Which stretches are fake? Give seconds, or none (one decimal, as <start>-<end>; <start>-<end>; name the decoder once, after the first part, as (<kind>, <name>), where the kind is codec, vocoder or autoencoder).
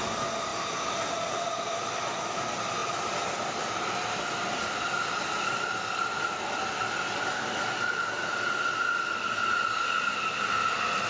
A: none